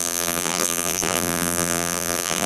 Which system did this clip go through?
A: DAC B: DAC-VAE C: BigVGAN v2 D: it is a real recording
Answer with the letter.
C